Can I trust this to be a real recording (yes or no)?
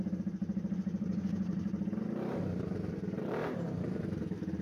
no